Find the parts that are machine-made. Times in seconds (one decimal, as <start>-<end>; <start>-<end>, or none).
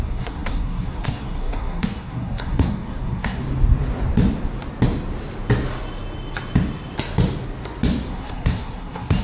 0.0-3.4; 8.1-9.2